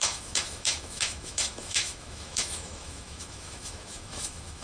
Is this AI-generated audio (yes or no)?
yes